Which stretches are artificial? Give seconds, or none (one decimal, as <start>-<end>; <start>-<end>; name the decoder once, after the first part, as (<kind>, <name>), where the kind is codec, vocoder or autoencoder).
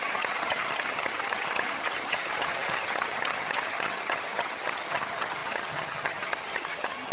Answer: 0.0-7.1 (vocoder, HiFi-GAN)